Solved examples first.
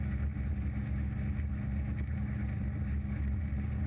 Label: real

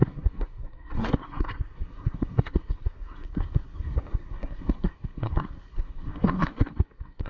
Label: fake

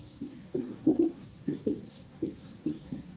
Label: fake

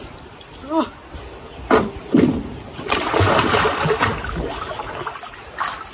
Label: real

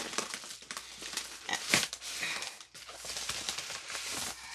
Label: real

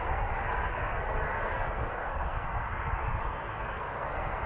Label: fake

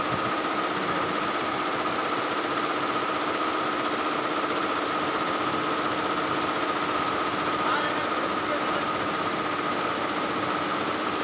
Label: real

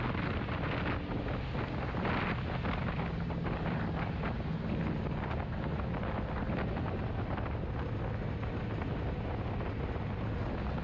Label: real